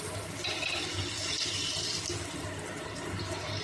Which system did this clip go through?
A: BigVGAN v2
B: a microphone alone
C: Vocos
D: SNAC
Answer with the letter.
B